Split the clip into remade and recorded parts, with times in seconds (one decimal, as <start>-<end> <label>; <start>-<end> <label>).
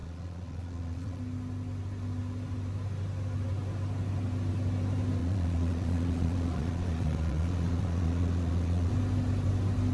0.0-1.2 remade; 1.2-5.2 recorded; 5.2-8.9 remade; 8.9-9.9 recorded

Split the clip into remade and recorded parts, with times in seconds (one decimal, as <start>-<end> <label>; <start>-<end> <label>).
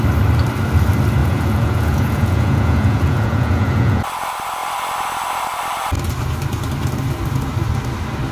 0.0-1.2 recorded; 1.2-4.0 remade; 4.0-8.3 recorded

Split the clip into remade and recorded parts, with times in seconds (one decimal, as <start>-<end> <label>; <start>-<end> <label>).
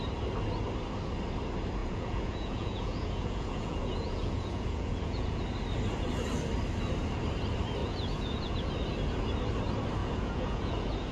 0.0-1.8 recorded; 1.8-5.4 remade; 5.4-7.8 recorded; 7.8-8.7 remade; 8.7-10.0 recorded; 10.0-11.1 remade